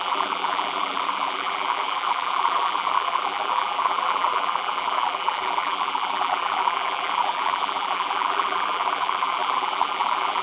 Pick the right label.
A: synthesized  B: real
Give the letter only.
A